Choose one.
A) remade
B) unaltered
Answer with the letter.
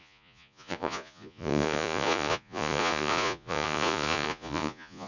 A